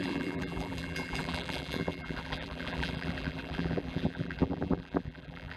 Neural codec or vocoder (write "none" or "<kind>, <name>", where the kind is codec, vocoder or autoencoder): vocoder, BigVGAN v2